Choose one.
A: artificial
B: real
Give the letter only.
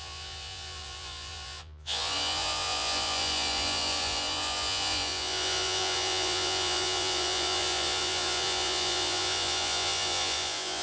A